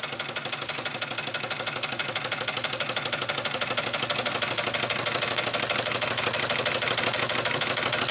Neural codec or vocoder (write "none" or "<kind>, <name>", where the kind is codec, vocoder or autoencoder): none